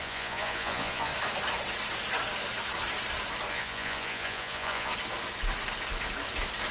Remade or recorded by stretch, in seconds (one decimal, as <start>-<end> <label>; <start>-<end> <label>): 0.0-1.1 remade; 1.1-3.5 recorded; 3.5-4.9 remade; 4.9-6.7 recorded